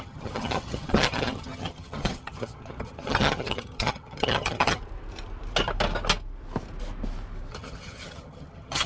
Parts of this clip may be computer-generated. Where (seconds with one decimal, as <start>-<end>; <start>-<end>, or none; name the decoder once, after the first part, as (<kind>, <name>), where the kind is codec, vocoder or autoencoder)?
0.0-4.8 (vocoder, HiFi-GAN); 7.5-8.9

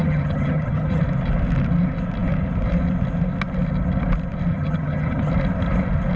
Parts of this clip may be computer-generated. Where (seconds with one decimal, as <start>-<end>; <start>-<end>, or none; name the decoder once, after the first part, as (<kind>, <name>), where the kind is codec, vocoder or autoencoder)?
0.0-1.0 (vocoder, HiFi-GAN); 4.5-5.3